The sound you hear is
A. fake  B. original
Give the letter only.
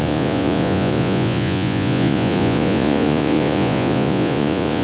A